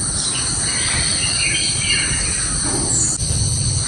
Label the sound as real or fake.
real